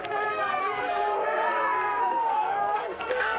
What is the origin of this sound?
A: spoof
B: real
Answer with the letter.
A